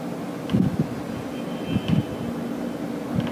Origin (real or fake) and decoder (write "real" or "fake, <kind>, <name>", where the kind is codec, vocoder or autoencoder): real